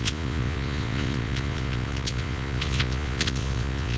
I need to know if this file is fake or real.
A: fake